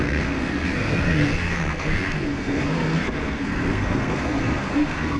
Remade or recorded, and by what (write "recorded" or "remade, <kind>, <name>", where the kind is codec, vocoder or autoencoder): remade, codec, SNAC